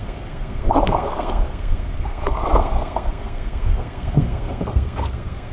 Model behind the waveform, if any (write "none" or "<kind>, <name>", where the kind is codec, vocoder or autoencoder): codec, SNAC